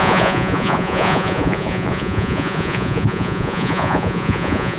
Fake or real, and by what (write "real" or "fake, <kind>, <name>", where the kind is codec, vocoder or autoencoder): fake, vocoder, Vocos